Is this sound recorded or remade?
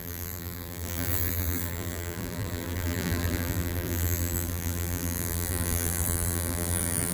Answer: remade